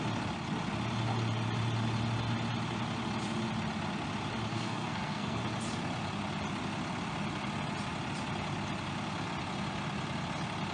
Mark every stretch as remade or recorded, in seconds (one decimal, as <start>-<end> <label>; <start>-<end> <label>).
0.0-4.5 recorded; 4.5-5.4 remade; 5.4-10.7 recorded